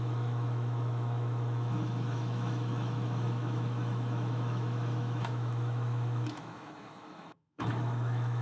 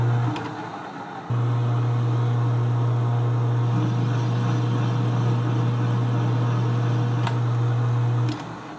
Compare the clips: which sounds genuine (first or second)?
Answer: second